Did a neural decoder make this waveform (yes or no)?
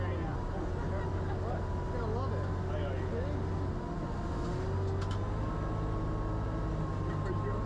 no